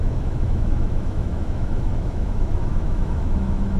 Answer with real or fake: fake